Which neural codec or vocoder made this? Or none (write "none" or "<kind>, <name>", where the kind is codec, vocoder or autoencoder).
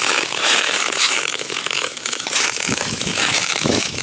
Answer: autoencoder, DAC-VAE